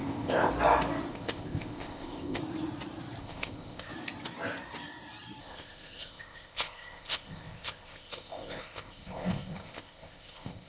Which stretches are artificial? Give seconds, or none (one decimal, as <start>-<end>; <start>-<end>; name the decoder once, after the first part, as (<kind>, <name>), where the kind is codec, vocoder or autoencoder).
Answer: 0.0-0.5 (codec, ZipCodec); 1.1-2.4; 3.2-3.9; 5.4-10.7

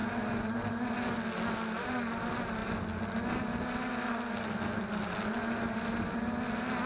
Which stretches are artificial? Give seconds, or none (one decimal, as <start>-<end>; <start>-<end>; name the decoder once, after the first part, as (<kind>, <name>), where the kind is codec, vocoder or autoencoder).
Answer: none